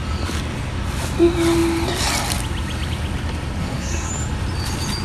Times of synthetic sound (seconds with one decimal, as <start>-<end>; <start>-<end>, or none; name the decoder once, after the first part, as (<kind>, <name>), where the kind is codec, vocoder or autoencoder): 3.6-4.1 (codec, SNAC)